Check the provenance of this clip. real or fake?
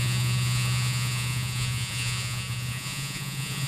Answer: fake